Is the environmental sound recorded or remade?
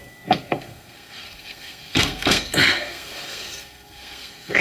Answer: remade